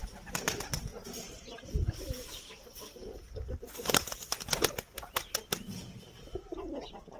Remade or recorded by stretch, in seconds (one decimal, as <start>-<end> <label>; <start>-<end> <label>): 0.0-7.2 recorded